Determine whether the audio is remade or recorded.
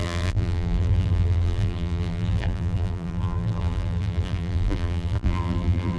remade